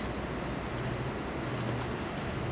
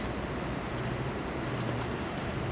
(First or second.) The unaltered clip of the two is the first